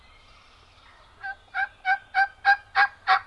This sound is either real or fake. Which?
real